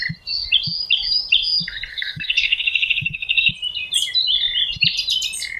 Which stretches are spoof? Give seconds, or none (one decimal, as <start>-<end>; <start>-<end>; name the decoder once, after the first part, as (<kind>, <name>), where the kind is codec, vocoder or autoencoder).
1.9-3.5 (codec, SNAC)